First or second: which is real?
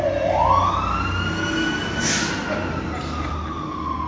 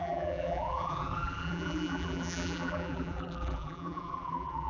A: first